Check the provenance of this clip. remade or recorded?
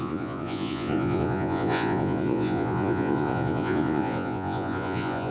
remade